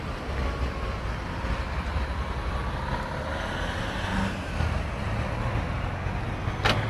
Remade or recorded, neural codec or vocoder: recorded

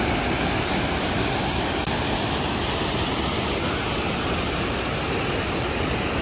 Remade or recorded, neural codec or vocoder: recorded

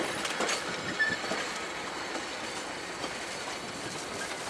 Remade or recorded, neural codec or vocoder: recorded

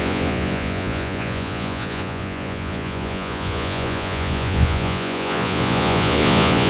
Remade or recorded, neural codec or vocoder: remade, vocoder, Vocos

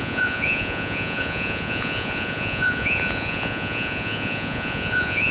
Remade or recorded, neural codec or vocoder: remade, vocoder, Vocos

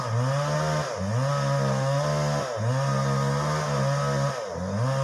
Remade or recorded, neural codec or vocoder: recorded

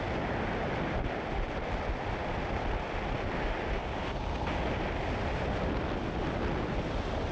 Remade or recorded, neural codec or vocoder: recorded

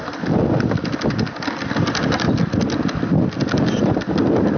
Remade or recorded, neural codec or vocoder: recorded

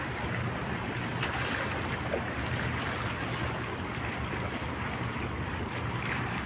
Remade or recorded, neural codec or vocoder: recorded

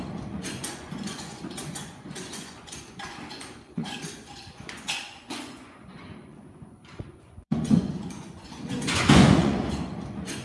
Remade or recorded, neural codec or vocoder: remade, vocoder, Vocos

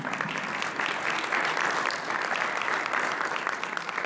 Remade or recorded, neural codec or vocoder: recorded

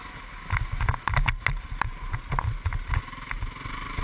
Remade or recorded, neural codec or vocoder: recorded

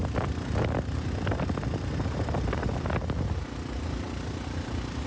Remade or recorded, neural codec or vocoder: recorded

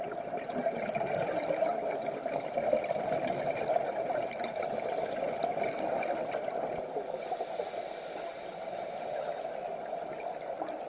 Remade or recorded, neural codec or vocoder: recorded